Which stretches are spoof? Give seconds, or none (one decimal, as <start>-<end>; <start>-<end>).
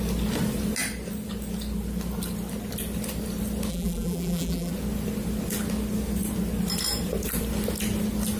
3.7-4.7